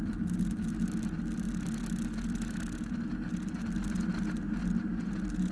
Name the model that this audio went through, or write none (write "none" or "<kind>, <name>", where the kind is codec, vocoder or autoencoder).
none